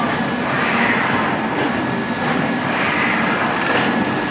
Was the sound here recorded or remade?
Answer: recorded